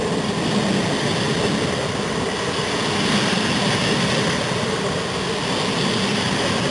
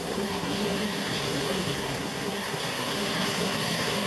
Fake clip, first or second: second